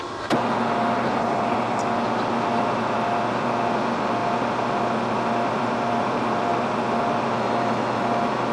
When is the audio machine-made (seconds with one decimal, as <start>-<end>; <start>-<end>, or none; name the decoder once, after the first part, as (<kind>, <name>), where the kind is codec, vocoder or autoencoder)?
none